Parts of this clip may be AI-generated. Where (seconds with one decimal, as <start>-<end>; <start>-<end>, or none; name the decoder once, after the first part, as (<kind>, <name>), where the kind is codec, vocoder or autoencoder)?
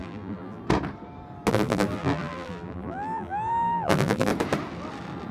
0.0-0.6 (vocoder, BigVGAN v2); 1.5-4.3